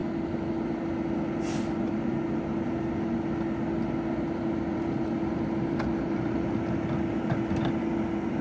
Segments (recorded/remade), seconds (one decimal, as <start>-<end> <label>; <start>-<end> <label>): 0.0-8.4 recorded